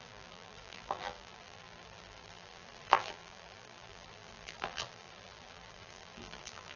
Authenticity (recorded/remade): remade